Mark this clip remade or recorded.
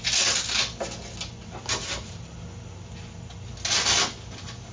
recorded